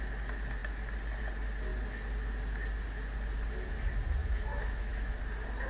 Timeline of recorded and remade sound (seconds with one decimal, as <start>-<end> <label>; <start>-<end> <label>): 0.0-4.2 recorded; 4.2-5.2 remade; 5.2-5.7 recorded